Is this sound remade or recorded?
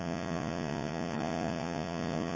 remade